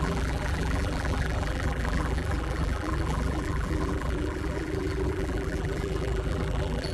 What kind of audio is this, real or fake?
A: fake